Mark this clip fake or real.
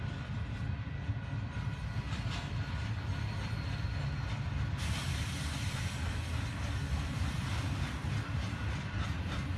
real